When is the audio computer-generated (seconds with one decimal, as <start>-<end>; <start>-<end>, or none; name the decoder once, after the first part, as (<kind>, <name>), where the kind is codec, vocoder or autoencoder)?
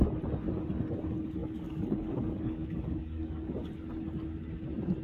1.4-3.5 (codec, DAC)